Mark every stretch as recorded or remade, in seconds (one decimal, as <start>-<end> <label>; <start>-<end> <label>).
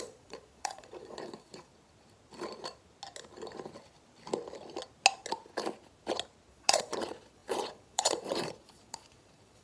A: 0.0-1.7 remade; 1.7-6.5 recorded; 6.5-9.6 remade